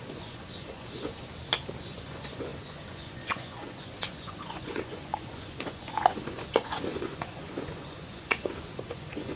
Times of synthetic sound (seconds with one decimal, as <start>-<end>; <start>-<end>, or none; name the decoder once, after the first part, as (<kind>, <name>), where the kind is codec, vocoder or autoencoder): 0.0-1.2 (vocoder, Vocos); 1.8-9.4